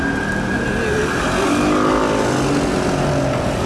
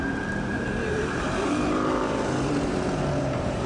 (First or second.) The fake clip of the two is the second